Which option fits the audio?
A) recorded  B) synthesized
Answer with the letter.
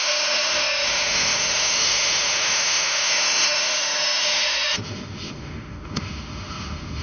B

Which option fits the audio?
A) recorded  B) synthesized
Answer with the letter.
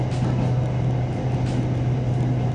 A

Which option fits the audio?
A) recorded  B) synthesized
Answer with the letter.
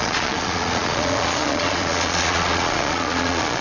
B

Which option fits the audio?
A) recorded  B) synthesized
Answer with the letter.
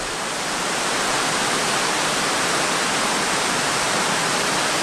A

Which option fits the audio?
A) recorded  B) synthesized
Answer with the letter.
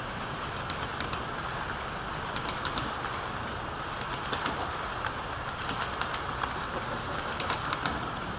A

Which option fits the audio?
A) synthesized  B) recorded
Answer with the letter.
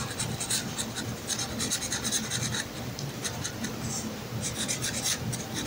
A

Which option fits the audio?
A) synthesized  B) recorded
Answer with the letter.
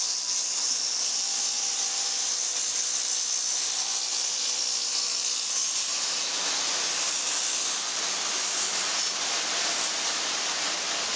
B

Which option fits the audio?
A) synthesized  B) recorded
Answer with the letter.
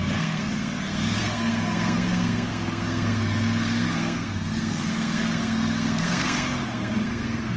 A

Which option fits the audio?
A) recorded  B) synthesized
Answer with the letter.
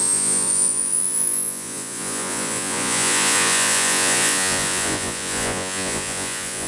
B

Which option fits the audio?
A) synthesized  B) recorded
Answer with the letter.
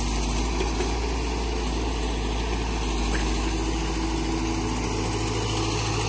B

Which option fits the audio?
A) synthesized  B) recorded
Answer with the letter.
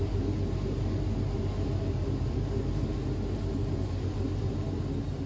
B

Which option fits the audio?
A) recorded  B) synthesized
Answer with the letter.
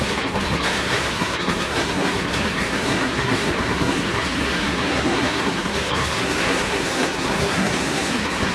B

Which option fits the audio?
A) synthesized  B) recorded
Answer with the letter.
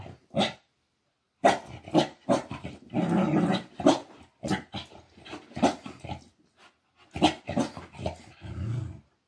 B